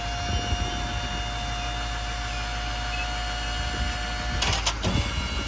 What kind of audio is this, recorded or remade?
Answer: recorded